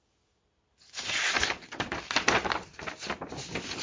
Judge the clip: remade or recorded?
recorded